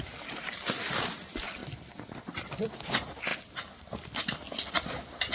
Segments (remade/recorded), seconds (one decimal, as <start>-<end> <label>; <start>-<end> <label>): 0.0-1.6 recorded; 1.6-2.7 remade; 2.7-5.3 recorded